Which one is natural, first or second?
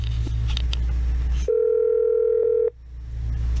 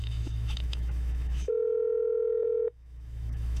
first